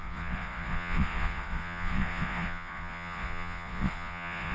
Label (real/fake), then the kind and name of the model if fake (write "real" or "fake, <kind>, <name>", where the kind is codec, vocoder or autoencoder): fake, vocoder, Vocos